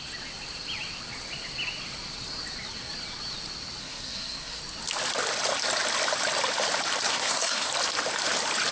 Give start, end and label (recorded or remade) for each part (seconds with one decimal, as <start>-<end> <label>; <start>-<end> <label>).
0.0-3.8 recorded; 3.8-4.6 remade; 4.6-7.1 recorded; 7.1-7.7 remade; 7.7-8.7 recorded